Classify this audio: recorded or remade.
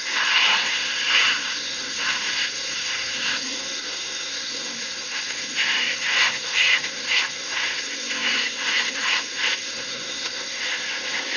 remade